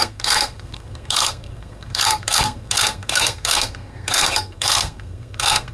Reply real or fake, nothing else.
fake